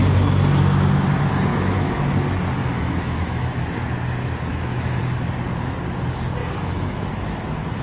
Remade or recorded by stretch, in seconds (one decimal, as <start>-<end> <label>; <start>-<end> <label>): 0.0-1.5 recorded; 1.5-2.1 remade; 2.1-2.6 recorded; 2.6-3.7 remade; 3.7-4.5 recorded; 4.5-5.0 remade; 5.0-6.4 recorded; 6.4-7.1 remade; 7.1-7.8 recorded